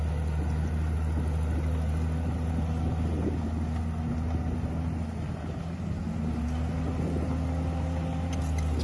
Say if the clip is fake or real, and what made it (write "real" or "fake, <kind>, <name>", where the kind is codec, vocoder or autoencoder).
real